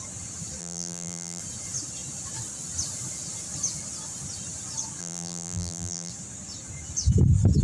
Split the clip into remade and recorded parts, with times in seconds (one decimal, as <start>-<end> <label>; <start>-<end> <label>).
0.0-0.6 recorded; 0.6-1.4 remade; 1.4-5.0 recorded; 5.0-6.1 remade; 6.1-7.6 recorded